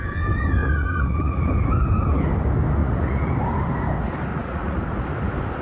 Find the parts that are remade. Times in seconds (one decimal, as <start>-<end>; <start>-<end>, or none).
0.6-1.5; 2.8-3.3; 4.3-4.8